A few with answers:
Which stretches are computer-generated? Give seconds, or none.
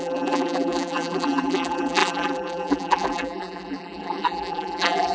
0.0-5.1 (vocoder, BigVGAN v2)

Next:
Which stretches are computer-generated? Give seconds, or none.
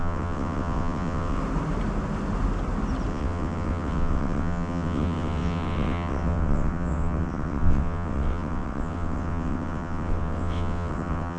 0.0-1.4 (vocoder, WaveNeXt); 3.1-11.4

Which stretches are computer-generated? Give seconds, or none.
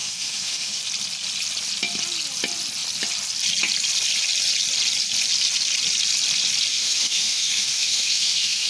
0.0-0.8 (autoencoder, DAC-VAE); 6.7-8.7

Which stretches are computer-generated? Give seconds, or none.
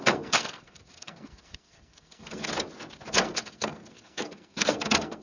0.0-2.5 (codec, SNAC); 3.1-5.2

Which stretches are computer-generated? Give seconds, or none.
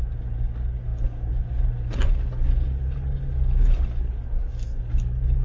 none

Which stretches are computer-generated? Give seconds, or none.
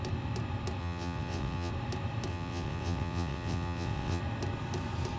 0.8-1.7 (vocoder, WaveNeXt); 2.3-4.2